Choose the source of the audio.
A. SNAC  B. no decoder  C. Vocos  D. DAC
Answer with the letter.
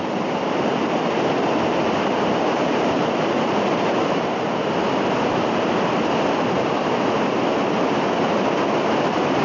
B